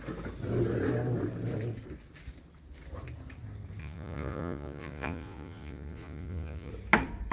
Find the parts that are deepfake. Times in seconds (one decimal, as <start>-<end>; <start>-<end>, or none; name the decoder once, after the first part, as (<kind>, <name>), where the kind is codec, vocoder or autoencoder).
3.8-6.7 (vocoder, Vocos)